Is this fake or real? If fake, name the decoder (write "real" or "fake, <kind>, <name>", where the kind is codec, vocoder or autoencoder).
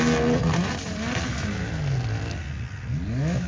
real